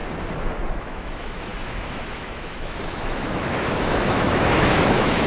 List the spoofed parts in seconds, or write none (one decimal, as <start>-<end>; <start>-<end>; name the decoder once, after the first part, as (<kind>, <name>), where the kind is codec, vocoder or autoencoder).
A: 0.8-5.3 (autoencoder, DAC-VAE)